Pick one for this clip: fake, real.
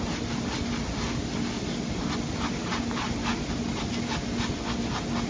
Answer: real